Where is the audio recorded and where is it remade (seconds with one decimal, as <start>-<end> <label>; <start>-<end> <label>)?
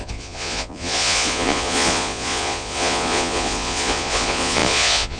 0.0-5.2 remade